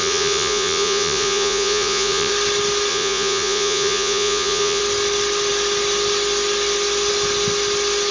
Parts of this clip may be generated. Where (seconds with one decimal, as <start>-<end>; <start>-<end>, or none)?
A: 0.0-2.3; 2.9-4.8